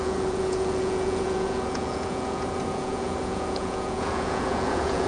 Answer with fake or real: fake